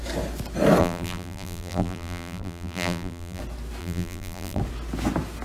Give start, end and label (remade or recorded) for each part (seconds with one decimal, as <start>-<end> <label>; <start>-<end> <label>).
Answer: 0.0-0.8 recorded; 0.8-3.4 remade; 3.4-3.8 recorded; 3.8-4.6 remade; 4.6-5.4 recorded